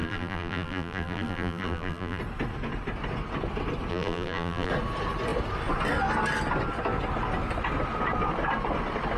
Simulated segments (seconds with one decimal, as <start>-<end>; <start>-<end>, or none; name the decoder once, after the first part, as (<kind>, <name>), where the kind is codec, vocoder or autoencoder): 0.0-2.2 (vocoder, BigVGAN v2); 3.9-4.7